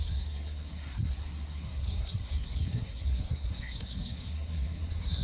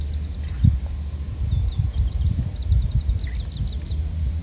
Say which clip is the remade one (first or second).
first